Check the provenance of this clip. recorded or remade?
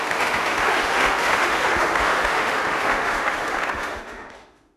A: remade